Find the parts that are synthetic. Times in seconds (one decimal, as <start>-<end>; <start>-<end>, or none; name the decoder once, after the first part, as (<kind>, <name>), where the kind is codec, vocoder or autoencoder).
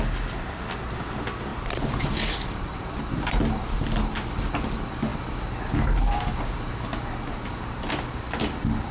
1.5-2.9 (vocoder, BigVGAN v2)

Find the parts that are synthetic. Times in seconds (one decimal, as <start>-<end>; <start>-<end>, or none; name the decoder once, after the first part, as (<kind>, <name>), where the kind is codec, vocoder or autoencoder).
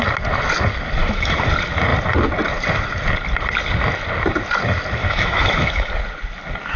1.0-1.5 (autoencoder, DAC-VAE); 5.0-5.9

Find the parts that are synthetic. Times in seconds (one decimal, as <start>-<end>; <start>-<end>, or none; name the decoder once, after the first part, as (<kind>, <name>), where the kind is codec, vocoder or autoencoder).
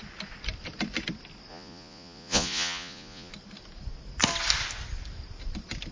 1.5-3.3 (vocoder, Vocos)